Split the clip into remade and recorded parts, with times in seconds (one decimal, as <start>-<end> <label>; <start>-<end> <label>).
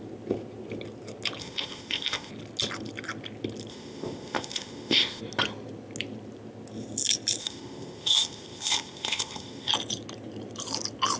0.0-1.4 recorded; 1.4-2.3 remade; 2.3-3.7 recorded; 3.7-5.2 remade; 5.2-7.4 recorded; 7.4-9.7 remade; 9.7-11.2 recorded